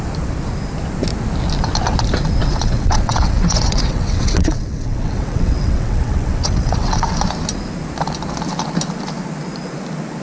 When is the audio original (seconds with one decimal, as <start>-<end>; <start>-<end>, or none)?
0.0-2.4; 7.2-10.2